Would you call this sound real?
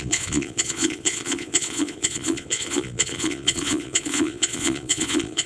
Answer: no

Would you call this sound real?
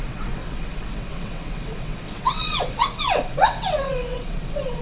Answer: no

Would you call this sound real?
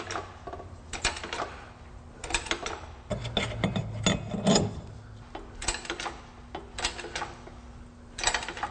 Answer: yes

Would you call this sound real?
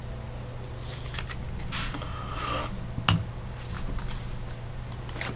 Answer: yes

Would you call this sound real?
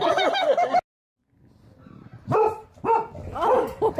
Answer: yes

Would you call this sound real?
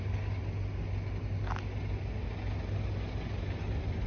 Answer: yes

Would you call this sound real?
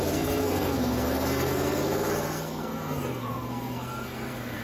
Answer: no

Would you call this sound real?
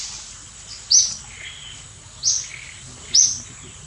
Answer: yes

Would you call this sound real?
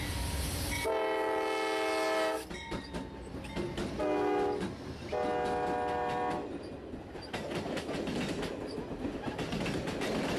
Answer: yes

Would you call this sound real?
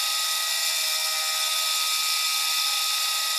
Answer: yes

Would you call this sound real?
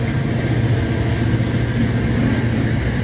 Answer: yes